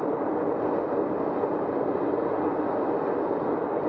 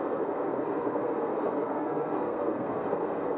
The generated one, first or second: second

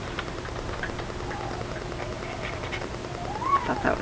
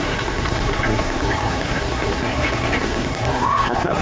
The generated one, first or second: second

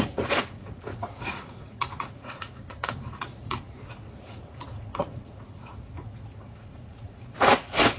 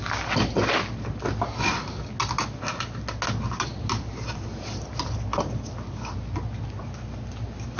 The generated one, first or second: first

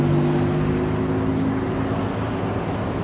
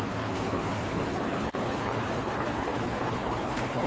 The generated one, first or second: second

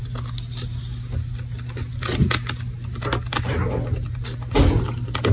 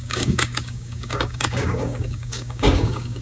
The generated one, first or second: second